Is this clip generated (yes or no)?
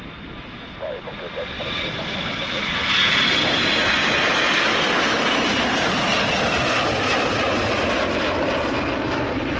yes